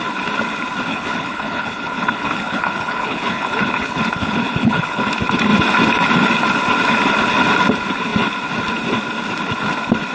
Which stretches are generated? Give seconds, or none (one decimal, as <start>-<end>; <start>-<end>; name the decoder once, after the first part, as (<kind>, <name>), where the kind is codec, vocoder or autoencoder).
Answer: 0.9-5.1 (codec, HILCodec)